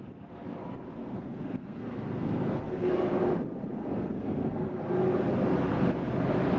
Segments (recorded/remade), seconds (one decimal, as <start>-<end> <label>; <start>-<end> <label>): 0.0-1.0 recorded; 1.0-2.9 remade; 2.9-3.8 recorded; 3.8-4.8 remade; 4.8-6.6 recorded